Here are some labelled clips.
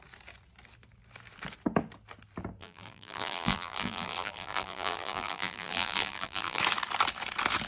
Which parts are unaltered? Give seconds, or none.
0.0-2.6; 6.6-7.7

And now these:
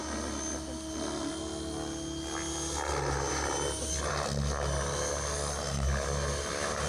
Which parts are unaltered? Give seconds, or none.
0.0-6.9